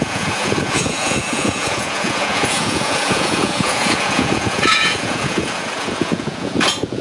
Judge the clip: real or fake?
fake